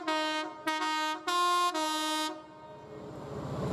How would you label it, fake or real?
real